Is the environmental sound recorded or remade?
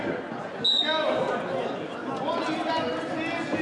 recorded